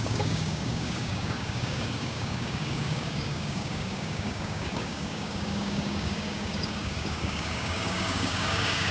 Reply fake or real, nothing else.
fake